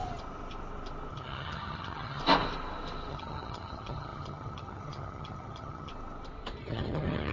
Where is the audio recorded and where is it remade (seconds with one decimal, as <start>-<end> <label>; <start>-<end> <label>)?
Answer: 0.0-1.1 recorded; 1.1-2.2 remade; 2.2-3.1 recorded; 3.1-5.9 remade; 5.9-6.6 recorded; 6.6-7.3 remade